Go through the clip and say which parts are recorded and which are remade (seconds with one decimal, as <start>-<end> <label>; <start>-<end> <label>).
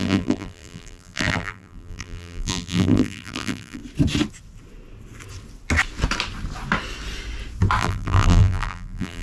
0.0-3.8 remade; 3.8-7.8 recorded; 7.8-9.2 remade